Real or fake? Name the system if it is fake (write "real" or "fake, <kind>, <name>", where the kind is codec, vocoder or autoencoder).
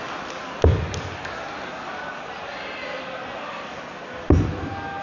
real